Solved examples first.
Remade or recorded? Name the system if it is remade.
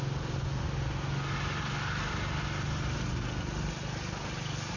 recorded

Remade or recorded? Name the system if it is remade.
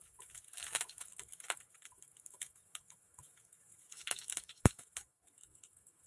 remade, autoencoder, DAC-VAE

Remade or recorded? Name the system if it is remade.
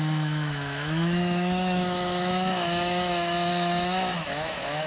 remade, autoencoder, DAC-VAE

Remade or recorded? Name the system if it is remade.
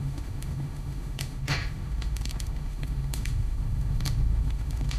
remade, autoencoder, DAC-VAE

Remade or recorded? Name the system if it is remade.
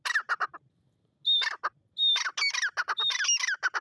recorded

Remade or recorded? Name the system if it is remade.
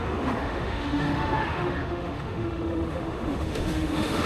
remade, autoencoder, DAC-VAE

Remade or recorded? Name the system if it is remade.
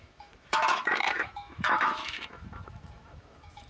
remade, autoencoder, DAC-VAE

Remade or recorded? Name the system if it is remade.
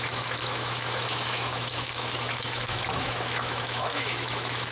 remade, autoencoder, DAC-VAE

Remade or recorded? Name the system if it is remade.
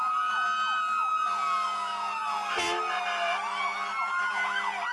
recorded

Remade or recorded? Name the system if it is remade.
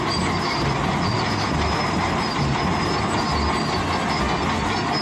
recorded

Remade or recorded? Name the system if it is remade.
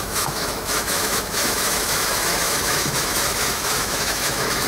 remade, autoencoder, DAC-VAE